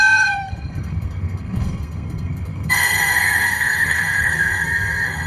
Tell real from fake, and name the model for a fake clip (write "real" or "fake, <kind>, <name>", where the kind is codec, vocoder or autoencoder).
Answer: fake, codec, SNAC